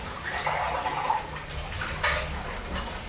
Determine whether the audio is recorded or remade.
recorded